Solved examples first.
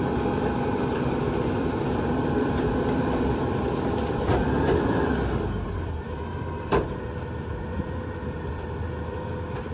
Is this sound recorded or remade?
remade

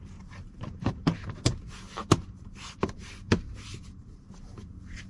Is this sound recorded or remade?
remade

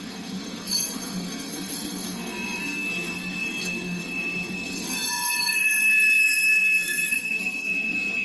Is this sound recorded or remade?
remade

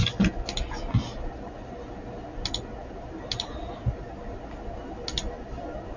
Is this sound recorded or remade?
recorded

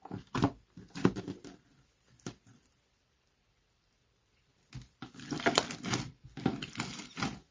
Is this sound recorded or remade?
remade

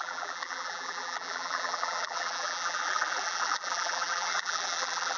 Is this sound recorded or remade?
remade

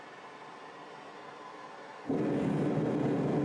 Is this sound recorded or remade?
recorded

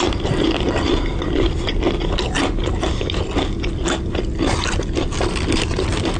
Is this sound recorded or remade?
recorded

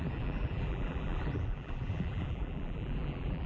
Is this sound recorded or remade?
remade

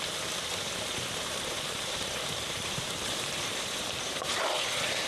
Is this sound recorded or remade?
remade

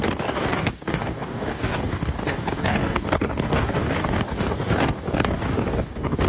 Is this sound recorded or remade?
remade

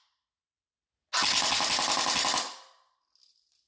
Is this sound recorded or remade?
recorded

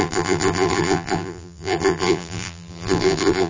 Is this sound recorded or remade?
remade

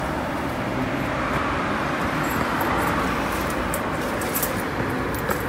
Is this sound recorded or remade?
recorded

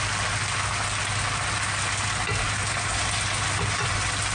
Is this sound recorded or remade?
recorded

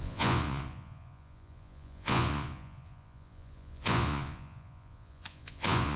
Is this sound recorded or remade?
remade